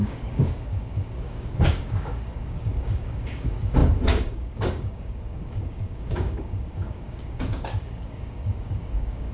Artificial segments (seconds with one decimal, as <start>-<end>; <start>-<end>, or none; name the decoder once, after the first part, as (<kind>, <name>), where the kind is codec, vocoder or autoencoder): 0.0-9.3 (codec, DAC)